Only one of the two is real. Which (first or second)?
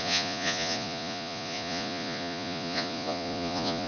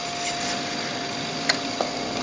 second